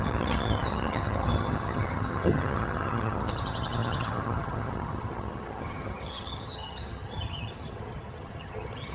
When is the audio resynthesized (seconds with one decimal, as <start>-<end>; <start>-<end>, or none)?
0.0-8.9